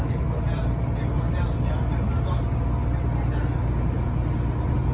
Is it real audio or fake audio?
real